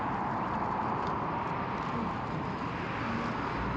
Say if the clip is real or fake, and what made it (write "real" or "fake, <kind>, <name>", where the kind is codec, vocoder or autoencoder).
real